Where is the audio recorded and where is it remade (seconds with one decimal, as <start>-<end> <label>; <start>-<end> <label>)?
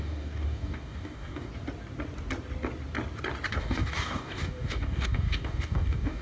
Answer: 0.0-1.5 remade; 1.5-3.5 recorded; 3.5-6.2 remade